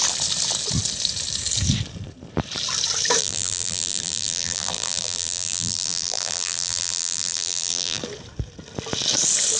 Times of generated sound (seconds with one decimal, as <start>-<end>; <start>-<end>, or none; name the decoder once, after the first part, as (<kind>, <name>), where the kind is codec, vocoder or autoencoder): 3.2-8.0 (vocoder, BigVGAN v2)